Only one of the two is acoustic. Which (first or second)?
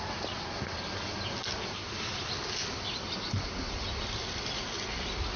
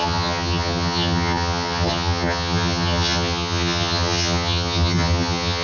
first